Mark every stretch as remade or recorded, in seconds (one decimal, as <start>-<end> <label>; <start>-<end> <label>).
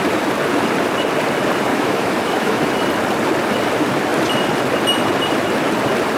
0.0-1.7 recorded; 1.7-2.6 remade; 2.6-6.2 recorded